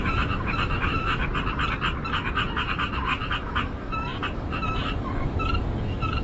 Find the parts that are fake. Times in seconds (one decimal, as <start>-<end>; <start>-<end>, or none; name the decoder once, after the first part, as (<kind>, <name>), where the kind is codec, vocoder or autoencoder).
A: 0.0-1.2 (autoencoder, DAC-VAE); 2.1-6.2